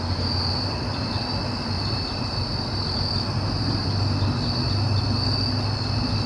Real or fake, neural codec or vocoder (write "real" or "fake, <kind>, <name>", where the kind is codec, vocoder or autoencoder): real